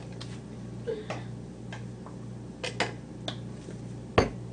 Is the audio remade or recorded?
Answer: recorded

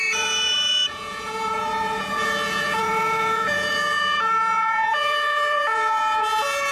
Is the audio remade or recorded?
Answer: remade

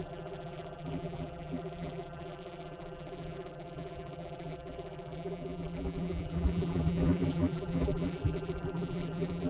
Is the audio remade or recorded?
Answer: remade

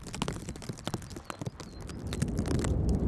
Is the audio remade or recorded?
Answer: recorded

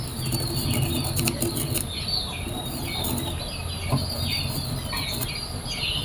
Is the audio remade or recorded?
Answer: remade